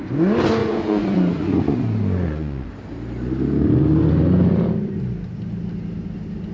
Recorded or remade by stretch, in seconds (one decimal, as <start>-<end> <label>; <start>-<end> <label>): 0.0-0.6 recorded; 0.6-2.7 remade; 2.7-6.5 recorded